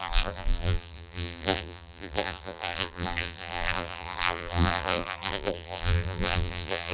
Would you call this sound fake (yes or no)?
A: yes